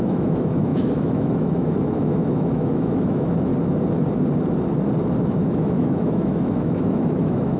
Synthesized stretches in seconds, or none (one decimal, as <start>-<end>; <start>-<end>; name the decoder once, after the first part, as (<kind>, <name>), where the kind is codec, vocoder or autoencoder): 0.0-3.5 (autoencoder, DAC-VAE); 5.3-7.6